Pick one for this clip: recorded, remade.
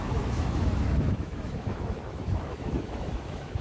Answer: remade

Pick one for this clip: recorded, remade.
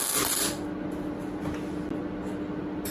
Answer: recorded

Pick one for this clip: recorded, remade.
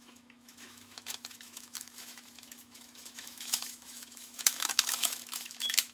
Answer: remade